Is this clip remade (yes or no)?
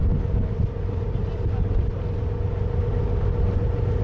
no